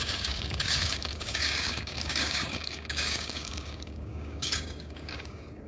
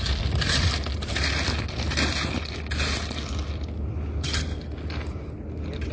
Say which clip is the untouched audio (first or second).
second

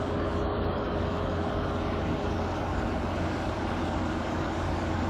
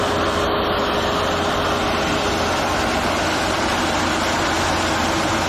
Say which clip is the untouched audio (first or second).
second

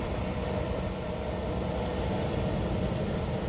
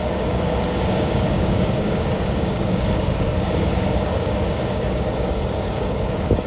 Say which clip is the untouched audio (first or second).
first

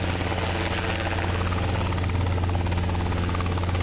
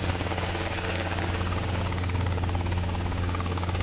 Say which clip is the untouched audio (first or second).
first